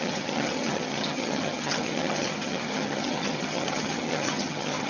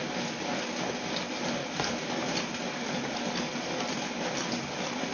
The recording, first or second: second